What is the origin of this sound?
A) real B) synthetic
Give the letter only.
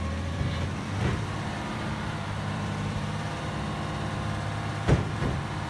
B